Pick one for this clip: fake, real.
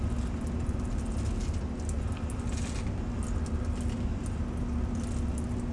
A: real